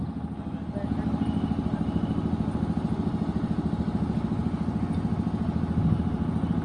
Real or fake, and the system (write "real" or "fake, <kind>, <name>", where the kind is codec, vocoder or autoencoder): real